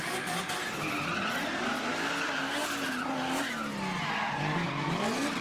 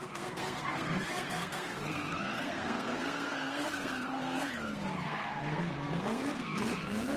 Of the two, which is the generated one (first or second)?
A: second